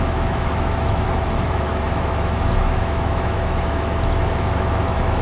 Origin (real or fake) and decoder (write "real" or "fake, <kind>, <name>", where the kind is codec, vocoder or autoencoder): fake, autoencoder, DAC-VAE